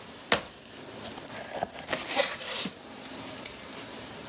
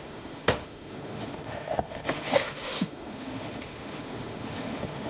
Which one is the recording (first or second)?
first